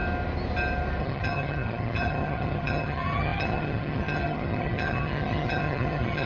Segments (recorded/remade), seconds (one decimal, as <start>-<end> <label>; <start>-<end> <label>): 0.0-1.0 recorded; 1.0-6.3 remade